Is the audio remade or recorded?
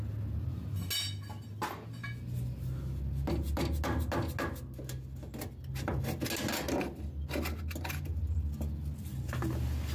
recorded